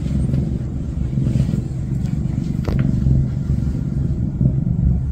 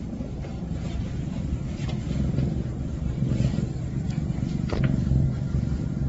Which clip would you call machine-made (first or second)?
second